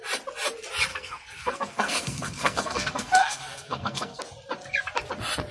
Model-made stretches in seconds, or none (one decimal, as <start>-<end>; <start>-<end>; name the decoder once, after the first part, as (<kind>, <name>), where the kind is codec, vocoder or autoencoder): 0.9-4.2 (codec, SNAC)